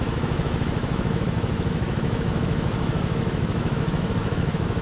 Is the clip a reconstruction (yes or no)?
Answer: yes